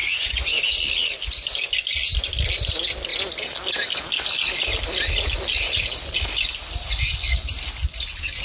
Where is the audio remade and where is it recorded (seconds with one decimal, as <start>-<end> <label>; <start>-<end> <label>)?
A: 0.0-0.6 remade; 0.6-8.4 recorded